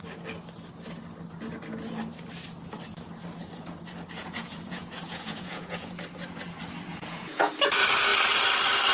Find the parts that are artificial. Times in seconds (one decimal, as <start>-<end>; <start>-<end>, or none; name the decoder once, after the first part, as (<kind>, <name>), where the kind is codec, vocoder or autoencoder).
4.2-6.0 (vocoder, Vocos); 6.9-7.5